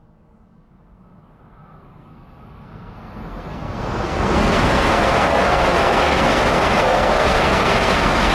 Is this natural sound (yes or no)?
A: no